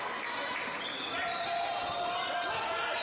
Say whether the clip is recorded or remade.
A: recorded